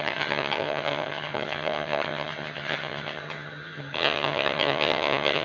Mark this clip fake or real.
fake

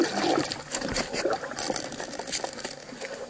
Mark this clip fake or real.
fake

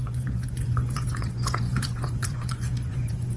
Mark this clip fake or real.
fake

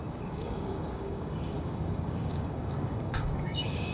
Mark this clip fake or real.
fake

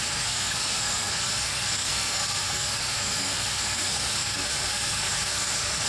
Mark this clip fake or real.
fake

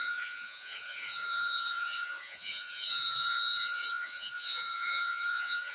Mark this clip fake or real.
fake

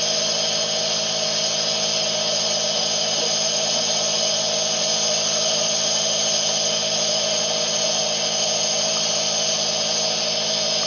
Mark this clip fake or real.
real